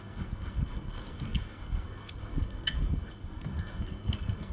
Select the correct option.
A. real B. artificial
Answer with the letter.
B